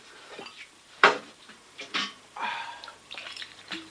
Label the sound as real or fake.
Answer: fake